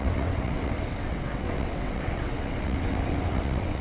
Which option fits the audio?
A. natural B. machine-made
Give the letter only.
B